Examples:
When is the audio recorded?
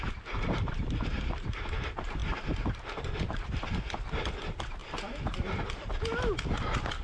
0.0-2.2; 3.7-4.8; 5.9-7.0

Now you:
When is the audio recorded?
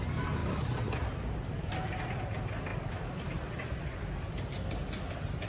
0.0-0.4; 2.2-2.7; 4.3-5.5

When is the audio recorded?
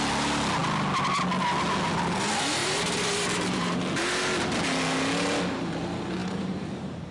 0.0-2.6; 3.8-6.2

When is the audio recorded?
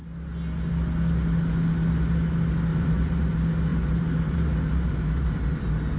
0.0-2.7; 3.3-3.7; 5.5-6.0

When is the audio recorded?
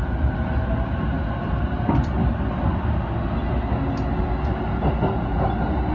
0.0-5.9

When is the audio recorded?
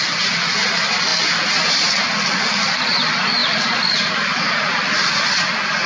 0.0-5.9